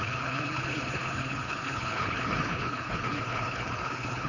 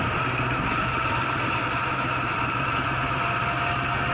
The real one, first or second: second